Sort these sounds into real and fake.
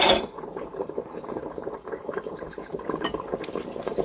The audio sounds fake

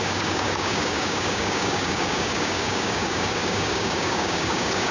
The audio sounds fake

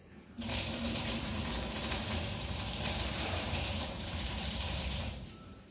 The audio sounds fake